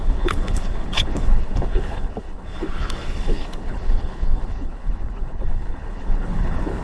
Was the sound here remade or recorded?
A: remade